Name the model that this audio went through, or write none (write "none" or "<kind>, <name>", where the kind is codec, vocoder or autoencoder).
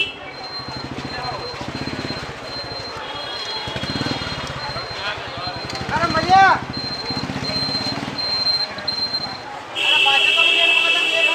none